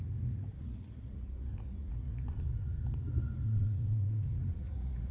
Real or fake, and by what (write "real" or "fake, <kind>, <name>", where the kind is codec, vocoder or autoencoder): fake, vocoder, Vocos